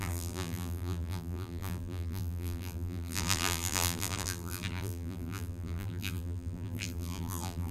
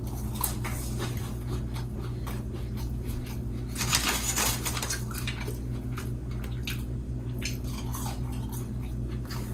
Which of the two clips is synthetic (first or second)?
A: first